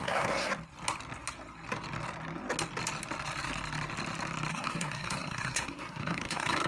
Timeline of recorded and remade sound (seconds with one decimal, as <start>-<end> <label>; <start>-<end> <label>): 0.0-0.5 remade; 0.5-4.5 recorded; 4.5-6.7 remade